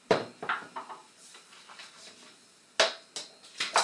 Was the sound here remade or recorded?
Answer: recorded